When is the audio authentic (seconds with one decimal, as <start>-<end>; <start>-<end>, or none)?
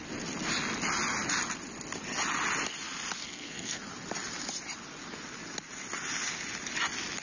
0.0-3.2; 3.8-7.2